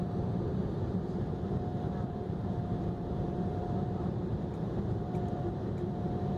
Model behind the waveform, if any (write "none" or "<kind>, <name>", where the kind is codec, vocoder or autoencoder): vocoder, BigVGAN v2